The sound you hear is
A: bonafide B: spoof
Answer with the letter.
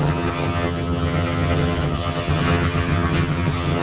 B